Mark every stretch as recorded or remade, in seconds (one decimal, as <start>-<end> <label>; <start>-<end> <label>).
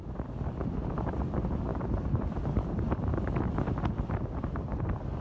0.0-1.7 recorded; 1.7-4.8 remade; 4.8-5.2 recorded